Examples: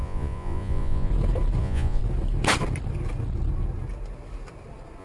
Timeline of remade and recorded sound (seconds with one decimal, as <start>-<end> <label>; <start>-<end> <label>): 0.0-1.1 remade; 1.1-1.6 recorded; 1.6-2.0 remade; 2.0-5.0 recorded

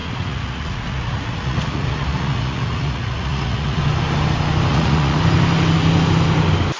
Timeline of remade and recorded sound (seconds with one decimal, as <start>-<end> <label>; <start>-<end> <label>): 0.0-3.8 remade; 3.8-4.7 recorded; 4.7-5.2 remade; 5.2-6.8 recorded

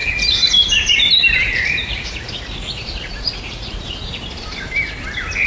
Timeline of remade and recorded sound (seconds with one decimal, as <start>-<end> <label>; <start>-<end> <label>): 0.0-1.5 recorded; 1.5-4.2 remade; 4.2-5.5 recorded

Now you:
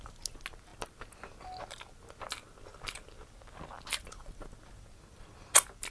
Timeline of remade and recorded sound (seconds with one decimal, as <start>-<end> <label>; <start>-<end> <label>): 0.0-5.9 recorded

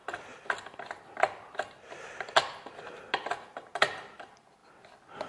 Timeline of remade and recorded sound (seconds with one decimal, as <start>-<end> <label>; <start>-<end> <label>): 0.0-5.3 recorded